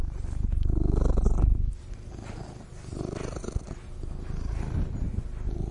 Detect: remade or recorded recorded